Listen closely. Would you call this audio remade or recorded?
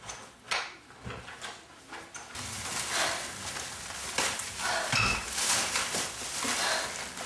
recorded